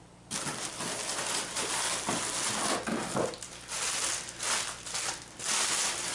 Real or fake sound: real